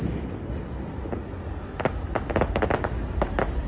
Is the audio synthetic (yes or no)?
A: no